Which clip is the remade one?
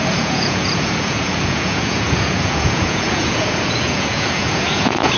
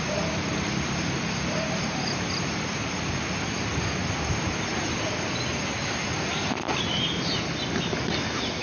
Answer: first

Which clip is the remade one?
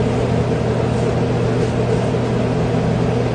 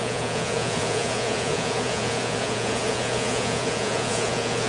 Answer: second